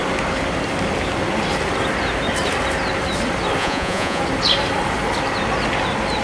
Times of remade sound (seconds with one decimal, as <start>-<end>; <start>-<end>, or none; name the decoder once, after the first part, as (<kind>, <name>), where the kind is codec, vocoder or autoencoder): 3.6-4.2 (vocoder, Vocos)